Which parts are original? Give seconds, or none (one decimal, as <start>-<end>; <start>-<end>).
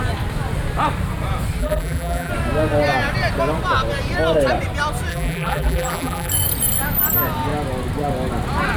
0.0-1.6; 2.3-5.1; 6.3-8.8